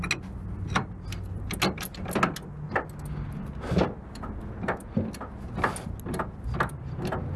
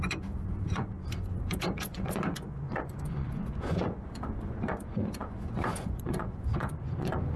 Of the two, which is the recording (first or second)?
first